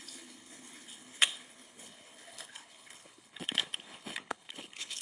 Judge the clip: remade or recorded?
remade